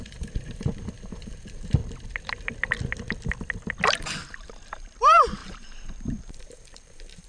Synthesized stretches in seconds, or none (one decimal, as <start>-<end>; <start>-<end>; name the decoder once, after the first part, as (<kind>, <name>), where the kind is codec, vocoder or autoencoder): 0.0-1.8 (vocoder, BigVGAN v2); 4.7-7.3